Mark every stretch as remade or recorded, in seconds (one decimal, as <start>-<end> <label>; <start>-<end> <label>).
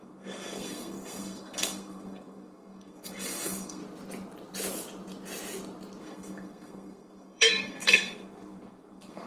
0.0-3.8 remade; 3.8-6.0 recorded; 6.0-9.3 remade